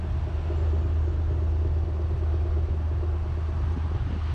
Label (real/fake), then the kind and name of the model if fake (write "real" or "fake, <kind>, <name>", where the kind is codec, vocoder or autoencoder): real